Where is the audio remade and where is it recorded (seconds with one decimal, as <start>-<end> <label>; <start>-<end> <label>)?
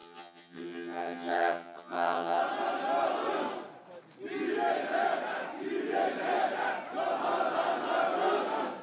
0.0-2.4 remade; 2.4-8.8 recorded